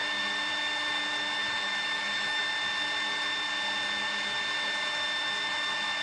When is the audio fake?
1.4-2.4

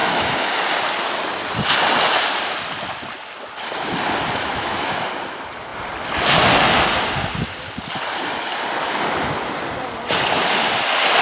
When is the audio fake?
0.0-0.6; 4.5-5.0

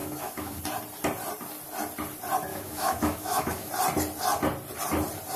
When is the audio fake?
0.0-0.6; 2.5-3.7